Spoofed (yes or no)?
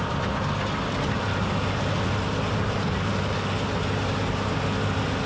no